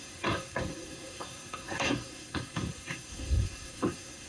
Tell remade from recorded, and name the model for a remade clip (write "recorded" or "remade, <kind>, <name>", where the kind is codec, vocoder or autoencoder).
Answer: remade, codec, SNAC